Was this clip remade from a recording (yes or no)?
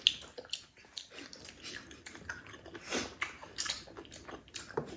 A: no